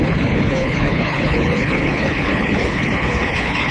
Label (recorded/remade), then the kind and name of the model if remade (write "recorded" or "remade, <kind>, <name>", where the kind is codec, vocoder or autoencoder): remade, codec, HILCodec